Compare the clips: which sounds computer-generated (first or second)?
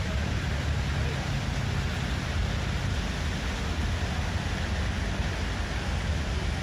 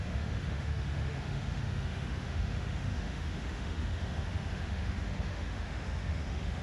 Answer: second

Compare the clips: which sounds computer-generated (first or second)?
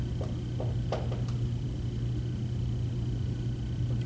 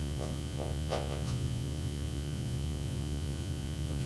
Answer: second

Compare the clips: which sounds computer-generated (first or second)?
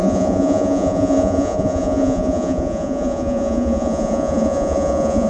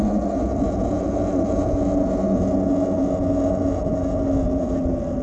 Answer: first